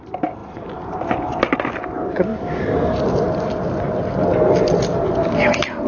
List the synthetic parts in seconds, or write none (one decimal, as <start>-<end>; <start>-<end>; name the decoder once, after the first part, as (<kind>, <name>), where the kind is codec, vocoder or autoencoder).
2.3-3.0 (vocoder, BigVGAN v2)